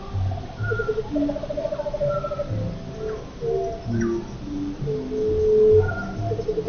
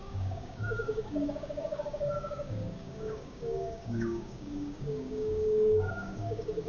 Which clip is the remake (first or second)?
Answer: second